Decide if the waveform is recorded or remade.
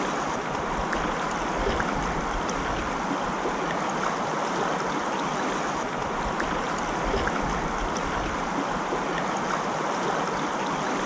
recorded